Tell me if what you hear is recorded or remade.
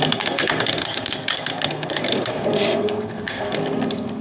remade